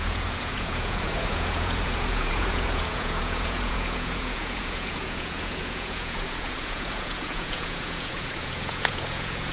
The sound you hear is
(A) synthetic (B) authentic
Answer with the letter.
A